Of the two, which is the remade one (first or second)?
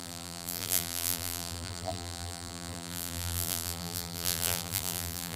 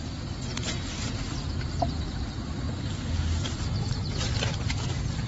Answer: first